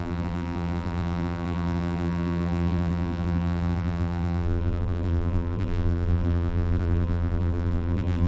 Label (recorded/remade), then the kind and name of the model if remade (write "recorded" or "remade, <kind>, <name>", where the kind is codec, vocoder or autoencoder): remade, vocoder, BigVGAN v2